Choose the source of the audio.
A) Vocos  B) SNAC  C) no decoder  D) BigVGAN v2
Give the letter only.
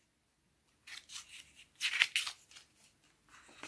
C